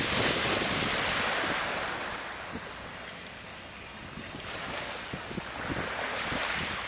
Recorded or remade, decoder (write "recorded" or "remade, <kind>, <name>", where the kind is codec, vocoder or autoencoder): recorded